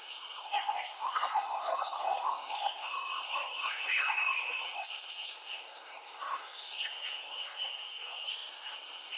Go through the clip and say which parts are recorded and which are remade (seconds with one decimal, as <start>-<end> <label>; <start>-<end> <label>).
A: 0.0-9.2 remade